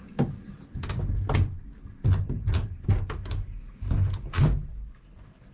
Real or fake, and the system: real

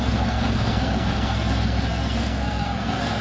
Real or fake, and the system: fake, codec, SNAC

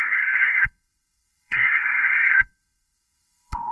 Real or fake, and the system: fake, codec, SNAC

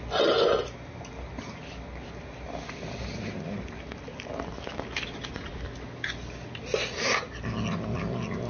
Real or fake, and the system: real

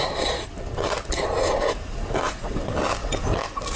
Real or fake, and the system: real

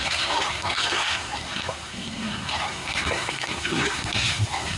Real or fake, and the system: fake, codec, SNAC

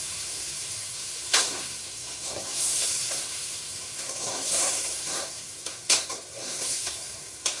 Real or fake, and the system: fake, codec, SNAC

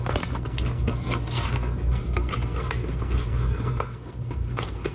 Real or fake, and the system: fake, codec, SNAC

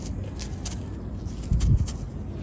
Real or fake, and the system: real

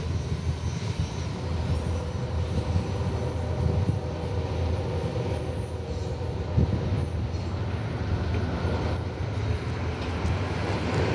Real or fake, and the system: real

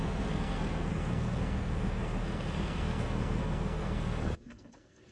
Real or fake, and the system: fake, codec, SNAC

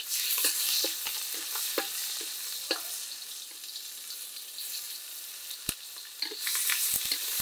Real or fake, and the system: real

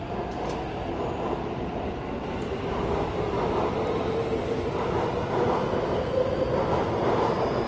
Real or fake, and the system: real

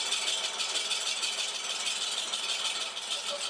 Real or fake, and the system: real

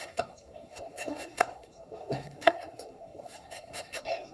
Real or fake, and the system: fake, codec, SNAC